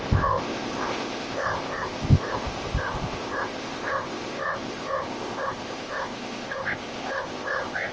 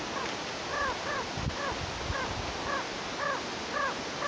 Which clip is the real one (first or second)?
second